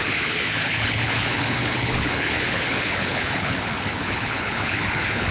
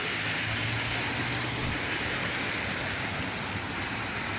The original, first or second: second